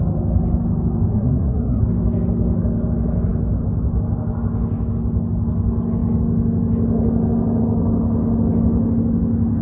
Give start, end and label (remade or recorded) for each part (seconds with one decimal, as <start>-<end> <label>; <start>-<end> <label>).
0.0-1.1 recorded; 1.1-1.8 remade; 1.8-9.6 recorded